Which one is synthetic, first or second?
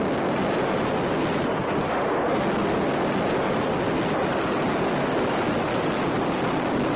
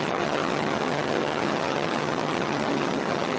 second